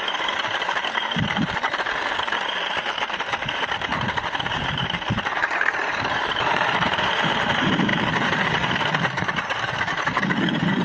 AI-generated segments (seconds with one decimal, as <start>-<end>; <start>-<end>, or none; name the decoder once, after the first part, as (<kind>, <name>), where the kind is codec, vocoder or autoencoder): 0.0-10.8 (vocoder, BigVGAN v2)